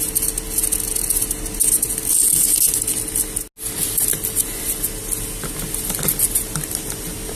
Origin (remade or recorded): recorded